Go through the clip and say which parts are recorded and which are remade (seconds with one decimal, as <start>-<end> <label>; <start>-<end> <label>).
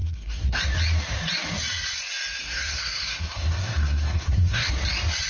0.0-0.6 remade; 0.6-2.4 recorded; 2.4-4.7 remade; 4.7-5.3 recorded